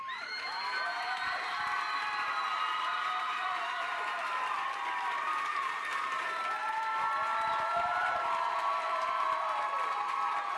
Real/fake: fake